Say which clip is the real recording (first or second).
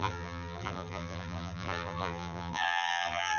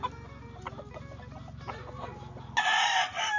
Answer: second